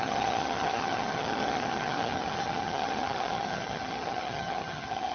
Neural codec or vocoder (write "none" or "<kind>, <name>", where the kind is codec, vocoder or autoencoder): vocoder, HiFi-GAN